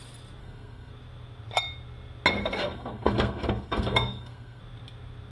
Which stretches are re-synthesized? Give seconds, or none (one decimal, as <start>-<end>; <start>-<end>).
0.4-0.9; 2.4-4.6